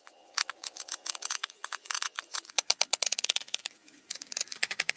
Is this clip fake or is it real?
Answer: fake